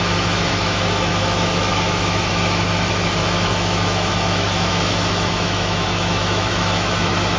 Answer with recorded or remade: remade